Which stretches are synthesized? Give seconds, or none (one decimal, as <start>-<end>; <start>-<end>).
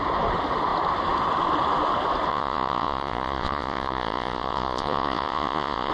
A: 2.3-5.9